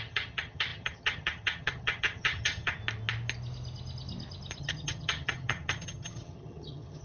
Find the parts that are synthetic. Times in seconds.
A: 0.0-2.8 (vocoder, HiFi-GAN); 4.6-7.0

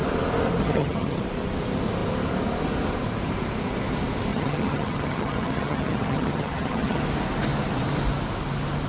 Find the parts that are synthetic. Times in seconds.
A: 0.6-1.2 (vocoder, HiFi-GAN); 4.3-7.0

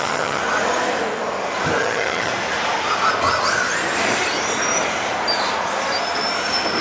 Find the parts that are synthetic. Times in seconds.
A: 0.0-0.4 (vocoder, HiFi-GAN); 1.8-2.3

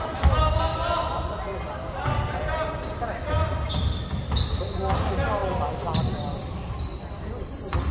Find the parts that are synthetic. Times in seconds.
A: none

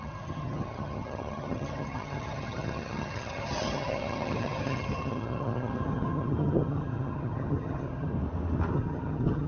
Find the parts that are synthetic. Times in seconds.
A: 0.0-8.1 (vocoder, HiFi-GAN); 8.7-9.5

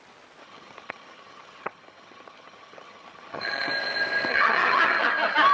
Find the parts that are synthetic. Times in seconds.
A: 0.4-3.7 (vocoder, HiFi-GAN); 4.3-5.1

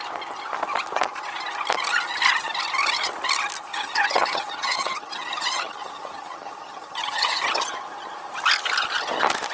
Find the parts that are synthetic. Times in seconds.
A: 3.7-7.4 (vocoder, HiFi-GAN)

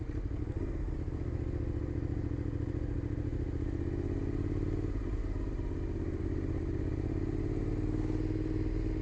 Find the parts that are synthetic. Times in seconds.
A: none